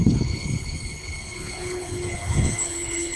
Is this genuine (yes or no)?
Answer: no